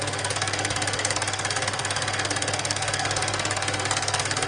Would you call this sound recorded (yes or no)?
no